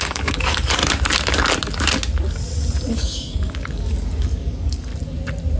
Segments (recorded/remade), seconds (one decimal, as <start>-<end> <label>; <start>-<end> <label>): 0.0-0.8 remade; 0.8-2.9 recorded; 2.9-4.9 remade; 4.9-5.6 recorded